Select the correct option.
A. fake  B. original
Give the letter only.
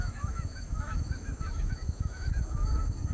A